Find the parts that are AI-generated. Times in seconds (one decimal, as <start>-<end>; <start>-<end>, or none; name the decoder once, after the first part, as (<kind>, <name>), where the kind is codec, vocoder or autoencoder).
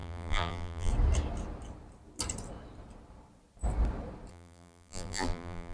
0.0-0.9 (vocoder, BigVGAN v2); 4.3-5.7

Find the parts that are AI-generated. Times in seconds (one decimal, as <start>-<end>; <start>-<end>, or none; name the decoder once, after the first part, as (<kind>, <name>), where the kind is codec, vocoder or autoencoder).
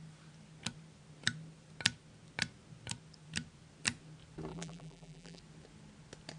4.5-5.4 (vocoder, BigVGAN v2)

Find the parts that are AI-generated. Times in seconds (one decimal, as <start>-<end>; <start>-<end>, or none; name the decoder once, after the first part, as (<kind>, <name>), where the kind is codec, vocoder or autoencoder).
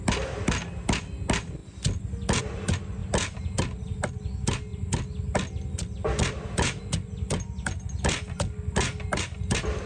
none